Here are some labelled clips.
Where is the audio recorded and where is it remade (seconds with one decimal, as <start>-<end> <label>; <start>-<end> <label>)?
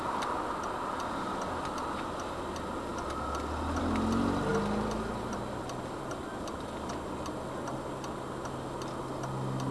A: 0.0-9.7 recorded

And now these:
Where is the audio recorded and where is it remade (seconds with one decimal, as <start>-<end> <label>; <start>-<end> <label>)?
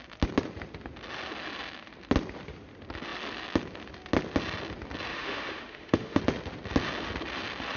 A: 0.0-5.1 recorded; 5.1-6.2 remade; 6.2-7.8 recorded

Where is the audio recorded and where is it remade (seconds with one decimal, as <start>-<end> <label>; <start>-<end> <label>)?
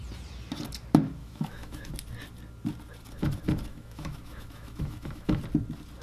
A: 0.0-1.2 recorded; 1.2-1.9 remade; 1.9-3.7 recorded; 3.7-5.4 remade; 5.4-6.0 recorded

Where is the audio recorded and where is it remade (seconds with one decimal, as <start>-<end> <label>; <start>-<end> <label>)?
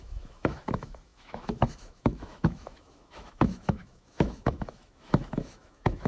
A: 0.0-6.1 remade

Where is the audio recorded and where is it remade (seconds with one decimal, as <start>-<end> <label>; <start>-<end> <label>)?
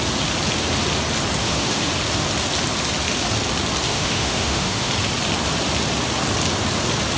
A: 0.0-1.4 recorded; 1.4-1.9 remade; 1.9-3.9 recorded; 3.9-4.9 remade; 4.9-7.2 recorded